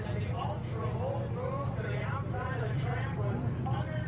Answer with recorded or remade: recorded